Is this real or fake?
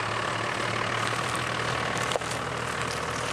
real